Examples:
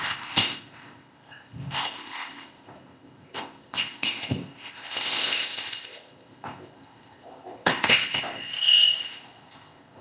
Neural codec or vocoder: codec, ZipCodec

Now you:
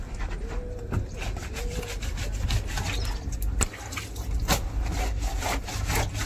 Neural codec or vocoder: none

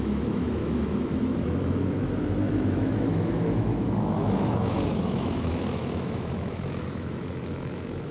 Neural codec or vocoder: autoencoder, DAC-VAE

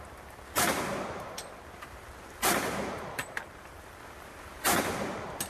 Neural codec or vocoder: none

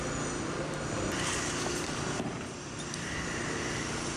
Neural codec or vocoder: none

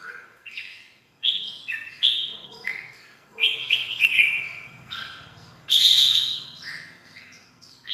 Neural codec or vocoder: codec, SNAC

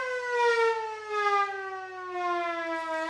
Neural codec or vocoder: none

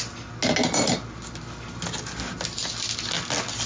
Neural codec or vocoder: none